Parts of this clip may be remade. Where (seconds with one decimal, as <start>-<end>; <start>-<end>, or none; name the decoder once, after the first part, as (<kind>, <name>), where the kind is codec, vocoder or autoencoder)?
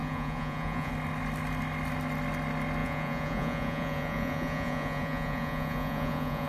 0.0-0.9 (vocoder, Vocos); 2.8-6.5